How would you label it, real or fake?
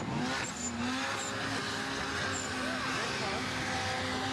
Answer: real